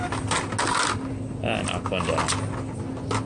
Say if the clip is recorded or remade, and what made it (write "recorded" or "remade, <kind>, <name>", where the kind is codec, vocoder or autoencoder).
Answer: recorded